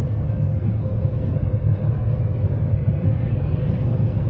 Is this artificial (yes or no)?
yes